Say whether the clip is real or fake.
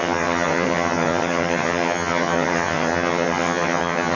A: fake